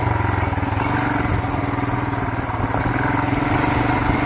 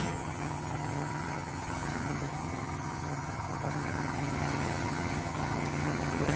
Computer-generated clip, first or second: second